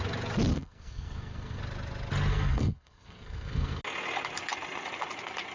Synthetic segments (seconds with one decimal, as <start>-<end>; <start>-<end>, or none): 0.5-1.6; 2.3-3.8